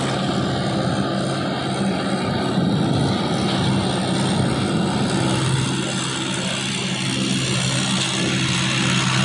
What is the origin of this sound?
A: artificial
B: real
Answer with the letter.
B